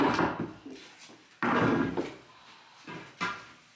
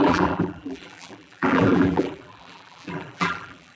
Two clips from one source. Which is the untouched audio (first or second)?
first